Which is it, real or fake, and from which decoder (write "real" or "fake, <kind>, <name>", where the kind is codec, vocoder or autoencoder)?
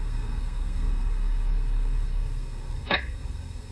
fake, codec, SNAC